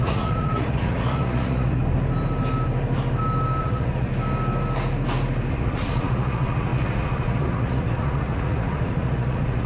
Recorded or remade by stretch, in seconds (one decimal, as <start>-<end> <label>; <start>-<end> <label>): 0.0-1.8 remade; 1.8-3.6 recorded; 3.6-4.1 remade; 4.1-5.5 recorded; 5.5-9.7 remade